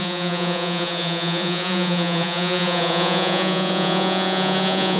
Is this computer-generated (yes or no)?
yes